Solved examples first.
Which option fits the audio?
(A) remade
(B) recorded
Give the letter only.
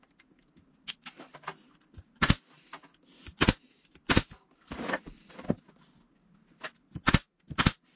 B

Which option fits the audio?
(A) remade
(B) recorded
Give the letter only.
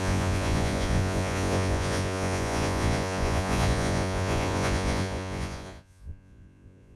A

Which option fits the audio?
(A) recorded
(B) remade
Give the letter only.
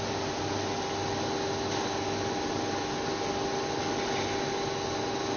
A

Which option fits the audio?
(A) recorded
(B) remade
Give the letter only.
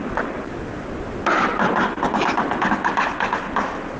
A